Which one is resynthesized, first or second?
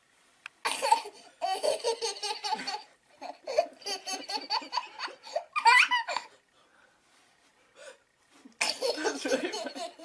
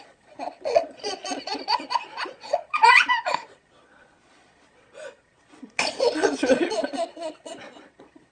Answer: second